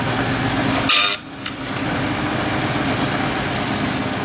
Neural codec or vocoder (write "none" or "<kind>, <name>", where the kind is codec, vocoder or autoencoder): none